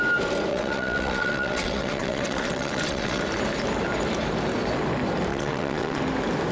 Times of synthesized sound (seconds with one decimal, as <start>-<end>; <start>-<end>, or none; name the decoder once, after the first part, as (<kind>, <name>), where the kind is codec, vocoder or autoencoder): 0.5-3.2 (vocoder, WaveNeXt); 5.3-6.0